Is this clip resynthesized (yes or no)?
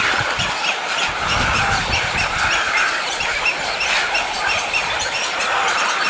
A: no